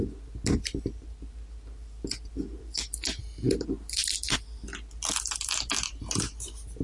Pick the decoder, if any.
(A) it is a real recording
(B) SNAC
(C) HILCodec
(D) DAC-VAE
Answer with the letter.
A